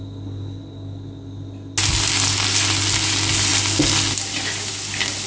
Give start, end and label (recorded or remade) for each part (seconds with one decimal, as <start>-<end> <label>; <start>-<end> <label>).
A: 0.0-5.3 recorded

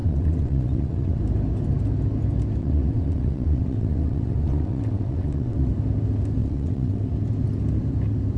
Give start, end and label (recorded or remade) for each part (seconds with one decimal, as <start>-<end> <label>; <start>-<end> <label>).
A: 0.0-1.2 remade; 1.2-2.6 recorded; 2.6-5.7 remade; 5.7-6.4 recorded; 6.4-7.1 remade; 7.1-8.4 recorded

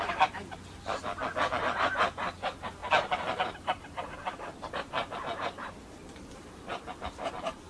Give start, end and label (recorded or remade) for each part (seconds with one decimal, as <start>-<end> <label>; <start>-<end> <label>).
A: 0.0-1.1 remade; 1.1-1.7 recorded; 1.7-2.8 remade; 2.8-3.4 recorded; 3.4-7.7 remade

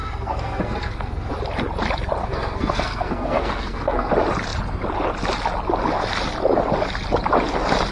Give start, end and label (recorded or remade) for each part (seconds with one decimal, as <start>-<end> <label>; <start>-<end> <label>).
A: 0.0-1.3 remade; 1.3-2.2 recorded; 2.2-4.1 remade; 4.1-7.9 recorded

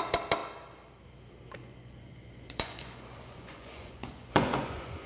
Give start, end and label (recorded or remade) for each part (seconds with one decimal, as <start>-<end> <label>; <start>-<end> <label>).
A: 0.0-1.6 recorded; 1.6-5.1 remade